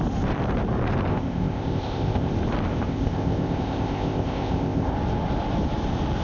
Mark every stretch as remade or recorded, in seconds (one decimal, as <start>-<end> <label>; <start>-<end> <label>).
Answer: 0.0-1.1 recorded; 1.1-2.3 remade; 2.3-2.7 recorded; 2.7-4.9 remade; 4.9-6.2 recorded